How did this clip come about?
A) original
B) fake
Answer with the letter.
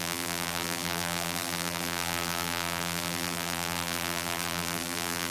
B